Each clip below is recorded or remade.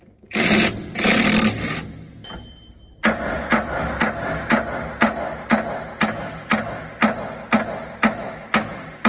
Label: recorded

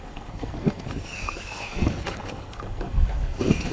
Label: remade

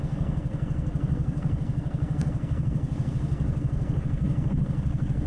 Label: remade